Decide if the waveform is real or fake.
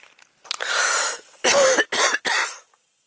real